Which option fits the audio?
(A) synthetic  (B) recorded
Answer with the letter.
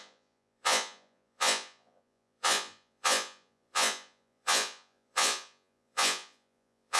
A